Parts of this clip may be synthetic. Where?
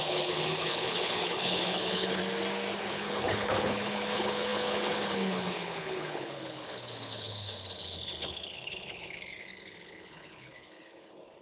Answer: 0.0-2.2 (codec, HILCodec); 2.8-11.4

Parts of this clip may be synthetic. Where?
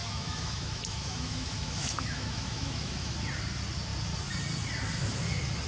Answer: 0.0-3.1 (autoencoder, DAC-VAE)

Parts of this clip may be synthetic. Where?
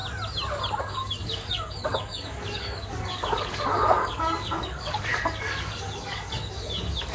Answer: 0.8-7.1 (codec, DAC)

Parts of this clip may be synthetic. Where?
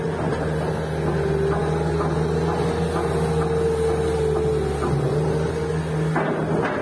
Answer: none